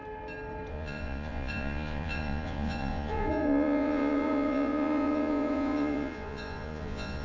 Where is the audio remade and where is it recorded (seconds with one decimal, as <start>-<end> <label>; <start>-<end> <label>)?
0.0-0.7 recorded; 0.7-7.2 remade